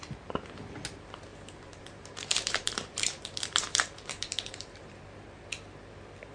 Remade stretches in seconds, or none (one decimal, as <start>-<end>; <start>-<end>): 1.3-5.1